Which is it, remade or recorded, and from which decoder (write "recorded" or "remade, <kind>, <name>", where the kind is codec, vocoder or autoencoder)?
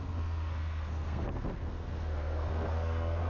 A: remade, codec, SNAC